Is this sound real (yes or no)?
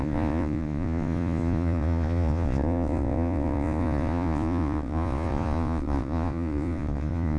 no